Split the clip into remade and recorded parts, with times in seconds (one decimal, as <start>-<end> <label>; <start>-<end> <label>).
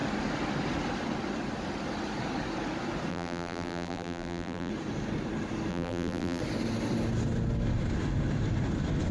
0.0-3.1 recorded; 3.1-4.7 remade; 4.7-5.7 recorded; 5.7-6.4 remade; 6.4-9.1 recorded